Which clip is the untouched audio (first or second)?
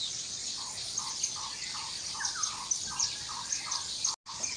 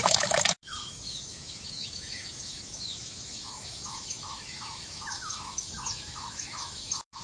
first